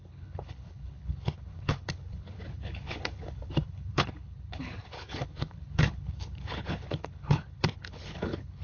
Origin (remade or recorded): remade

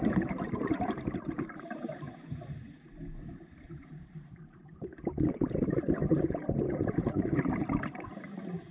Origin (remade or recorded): remade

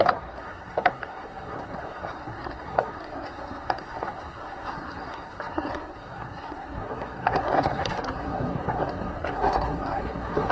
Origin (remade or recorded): remade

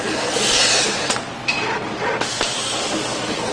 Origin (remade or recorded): recorded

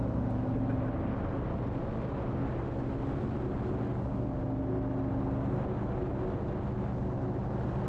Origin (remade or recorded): recorded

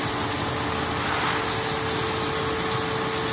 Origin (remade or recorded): recorded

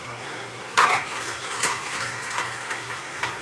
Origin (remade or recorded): remade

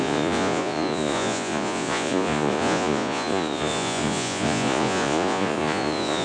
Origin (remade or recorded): remade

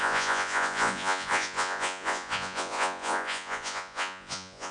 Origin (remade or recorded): remade